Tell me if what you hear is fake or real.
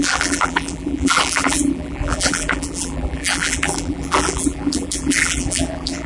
fake